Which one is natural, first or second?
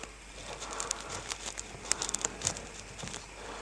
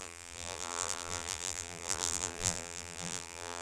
first